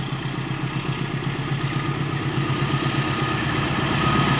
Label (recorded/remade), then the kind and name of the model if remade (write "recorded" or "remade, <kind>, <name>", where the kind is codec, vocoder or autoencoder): recorded